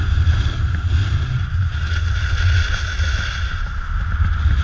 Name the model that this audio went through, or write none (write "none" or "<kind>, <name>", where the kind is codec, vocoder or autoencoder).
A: none